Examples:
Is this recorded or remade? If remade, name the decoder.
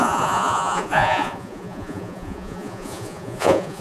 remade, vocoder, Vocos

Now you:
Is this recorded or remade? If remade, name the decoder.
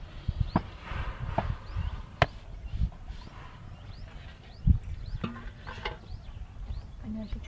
recorded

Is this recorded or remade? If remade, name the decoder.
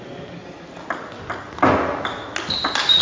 recorded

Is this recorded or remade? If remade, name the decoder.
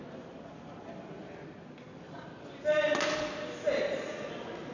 recorded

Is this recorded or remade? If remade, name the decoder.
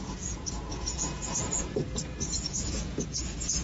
remade, vocoder, Vocos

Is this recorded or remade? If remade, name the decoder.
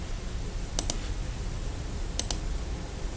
recorded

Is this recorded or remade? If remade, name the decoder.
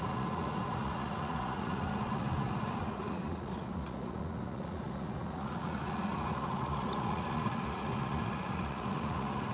remade, vocoder, Vocos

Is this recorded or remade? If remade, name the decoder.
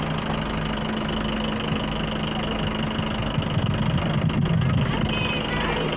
recorded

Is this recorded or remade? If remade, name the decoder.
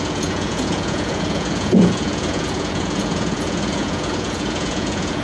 remade, vocoder, Vocos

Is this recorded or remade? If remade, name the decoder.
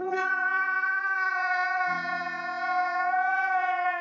remade, vocoder, Vocos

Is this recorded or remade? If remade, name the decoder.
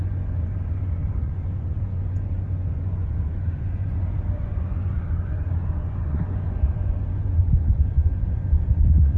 remade, vocoder, Vocos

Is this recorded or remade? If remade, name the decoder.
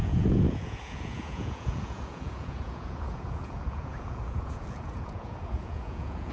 remade, vocoder, Vocos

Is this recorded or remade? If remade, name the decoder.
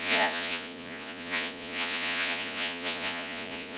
remade, vocoder, Vocos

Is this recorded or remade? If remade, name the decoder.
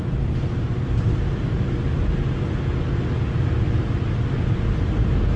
recorded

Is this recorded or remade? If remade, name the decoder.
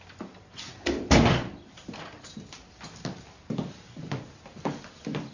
recorded